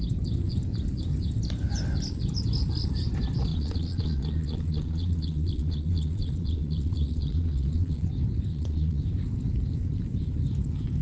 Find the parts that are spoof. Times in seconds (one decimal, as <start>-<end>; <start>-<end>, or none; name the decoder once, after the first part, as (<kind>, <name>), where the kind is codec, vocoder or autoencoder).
3.5-8.1 (vocoder, Vocos); 8.5-9.0